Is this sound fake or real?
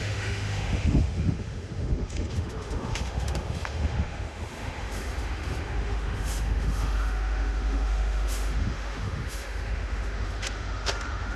fake